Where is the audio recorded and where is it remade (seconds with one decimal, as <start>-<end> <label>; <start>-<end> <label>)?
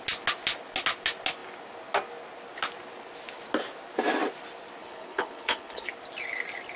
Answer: 0.0-4.8 recorded; 4.8-5.9 remade; 5.9-6.8 recorded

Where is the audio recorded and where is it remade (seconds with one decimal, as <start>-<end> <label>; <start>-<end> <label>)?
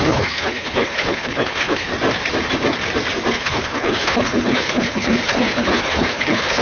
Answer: 0.0-1.9 remade; 1.9-3.3 recorded; 3.3-6.6 remade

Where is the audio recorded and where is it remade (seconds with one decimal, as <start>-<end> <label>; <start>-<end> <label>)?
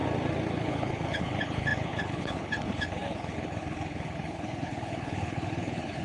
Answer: 0.0-0.5 recorded; 0.5-6.0 remade